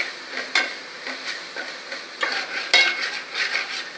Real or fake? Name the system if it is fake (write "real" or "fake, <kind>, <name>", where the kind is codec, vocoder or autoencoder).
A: real